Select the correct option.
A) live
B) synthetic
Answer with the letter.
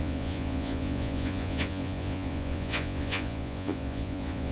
B